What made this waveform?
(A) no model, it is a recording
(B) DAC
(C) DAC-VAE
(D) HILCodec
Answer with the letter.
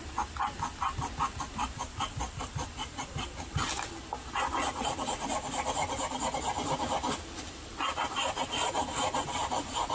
A